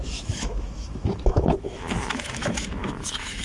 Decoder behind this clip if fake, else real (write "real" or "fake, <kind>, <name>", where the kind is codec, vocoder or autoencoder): fake, autoencoder, DAC-VAE